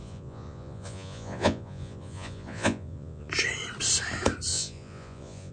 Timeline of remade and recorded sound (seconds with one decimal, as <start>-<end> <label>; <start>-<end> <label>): 0.0-3.3 remade; 3.3-4.5 recorded; 4.5-5.5 remade